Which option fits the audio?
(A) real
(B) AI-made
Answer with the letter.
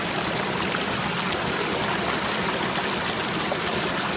A